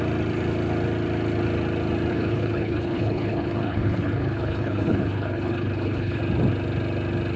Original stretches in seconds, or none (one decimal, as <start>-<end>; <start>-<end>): 0.0-2.1; 6.2-7.4